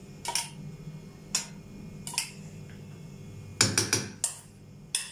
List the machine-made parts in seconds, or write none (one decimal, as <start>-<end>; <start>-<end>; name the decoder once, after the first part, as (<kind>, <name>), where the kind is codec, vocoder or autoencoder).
none